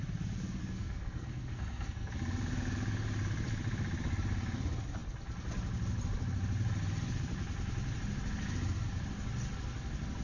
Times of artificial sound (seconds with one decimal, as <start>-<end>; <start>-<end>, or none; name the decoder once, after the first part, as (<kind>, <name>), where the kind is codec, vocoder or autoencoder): 0.6-2.1 (codec, SNAC)

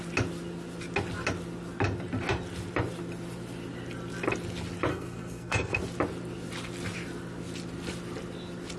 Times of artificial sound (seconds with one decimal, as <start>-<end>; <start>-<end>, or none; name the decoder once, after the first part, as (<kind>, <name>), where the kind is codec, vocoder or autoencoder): 4.9-5.8 (codec, SNAC)

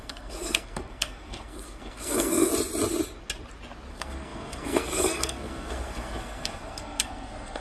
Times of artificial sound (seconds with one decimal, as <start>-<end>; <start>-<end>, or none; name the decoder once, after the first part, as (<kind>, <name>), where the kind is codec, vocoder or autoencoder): 0.0-2.5 (codec, SNAC); 3.9-7.6

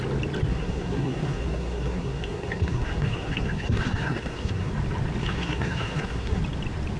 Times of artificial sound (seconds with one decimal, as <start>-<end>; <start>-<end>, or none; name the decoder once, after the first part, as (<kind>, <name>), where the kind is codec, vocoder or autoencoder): 0.5-4.7 (codec, SNAC); 5.2-6.4

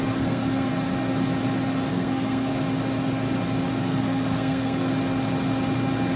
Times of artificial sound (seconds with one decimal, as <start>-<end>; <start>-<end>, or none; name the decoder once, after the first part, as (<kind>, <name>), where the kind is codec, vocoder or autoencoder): 0.0-0.7 (codec, SNAC); 1.9-2.5; 3.8-4.9

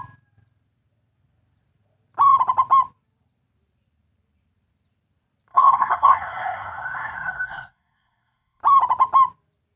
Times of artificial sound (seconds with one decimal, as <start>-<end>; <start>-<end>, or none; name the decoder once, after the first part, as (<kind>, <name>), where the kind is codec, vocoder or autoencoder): 5.5-8.6 (codec, SNAC)

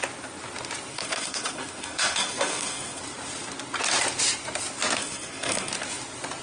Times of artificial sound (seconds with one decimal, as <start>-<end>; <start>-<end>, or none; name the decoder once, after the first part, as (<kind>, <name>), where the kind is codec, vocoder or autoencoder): 0.9-3.0 (codec, SNAC); 5.0-5.7

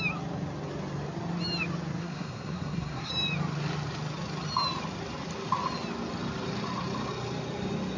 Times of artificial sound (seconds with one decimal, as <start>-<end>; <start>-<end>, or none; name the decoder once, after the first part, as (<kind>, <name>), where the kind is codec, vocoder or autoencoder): 2.0-3.1 (codec, SNAC)